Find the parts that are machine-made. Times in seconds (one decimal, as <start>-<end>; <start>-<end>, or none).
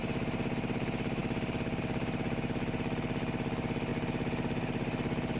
0.0-5.4